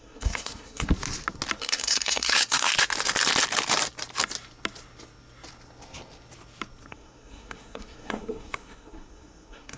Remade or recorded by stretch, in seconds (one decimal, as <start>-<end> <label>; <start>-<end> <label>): 0.0-0.9 remade; 0.9-1.6 recorded; 1.6-2.7 remade; 2.7-6.9 recorded; 6.9-9.8 remade